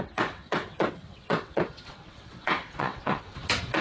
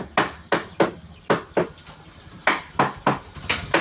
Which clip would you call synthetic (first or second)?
first